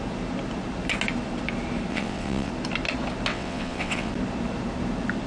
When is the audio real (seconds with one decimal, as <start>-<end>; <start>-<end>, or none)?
0.0-1.9; 2.5-3.3; 4.1-5.3